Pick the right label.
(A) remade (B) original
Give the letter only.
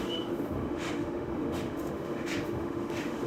A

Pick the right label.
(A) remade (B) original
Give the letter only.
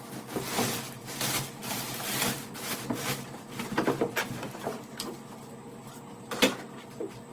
B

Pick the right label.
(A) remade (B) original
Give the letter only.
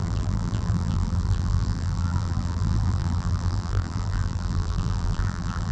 A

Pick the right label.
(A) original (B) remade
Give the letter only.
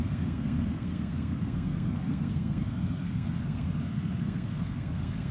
B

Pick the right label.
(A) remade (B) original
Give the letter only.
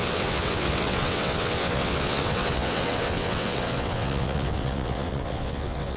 A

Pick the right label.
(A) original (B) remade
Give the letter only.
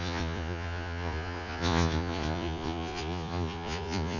B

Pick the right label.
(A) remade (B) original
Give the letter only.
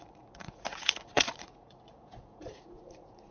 A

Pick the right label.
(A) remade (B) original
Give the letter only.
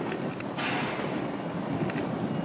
B